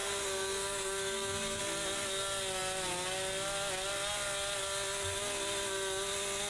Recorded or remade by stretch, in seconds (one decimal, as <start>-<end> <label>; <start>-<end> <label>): 0.0-1.6 remade; 1.6-6.5 recorded